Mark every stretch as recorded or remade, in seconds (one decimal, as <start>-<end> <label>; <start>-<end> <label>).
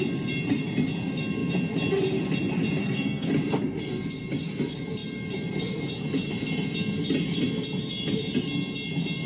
0.0-2.8 recorded; 2.8-3.3 remade; 3.3-9.3 recorded